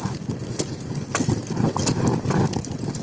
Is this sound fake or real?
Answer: real